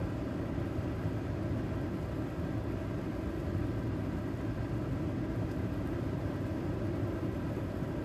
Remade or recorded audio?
recorded